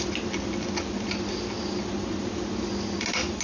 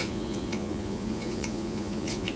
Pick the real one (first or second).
first